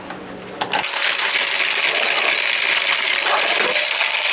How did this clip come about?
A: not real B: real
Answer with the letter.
B